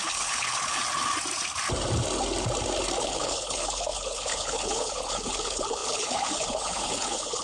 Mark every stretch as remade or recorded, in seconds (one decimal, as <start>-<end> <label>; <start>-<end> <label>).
0.0-0.8 remade; 0.8-3.0 recorded; 3.0-7.4 remade